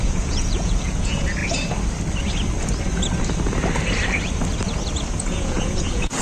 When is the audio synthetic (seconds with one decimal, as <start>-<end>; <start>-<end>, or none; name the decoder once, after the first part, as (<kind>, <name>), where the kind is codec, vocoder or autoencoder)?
0.0-1.4 (vocoder, Vocos); 5.1-6.2